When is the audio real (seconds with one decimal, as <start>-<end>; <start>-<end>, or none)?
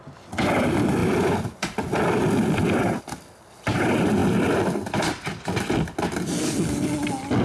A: 0.0-7.4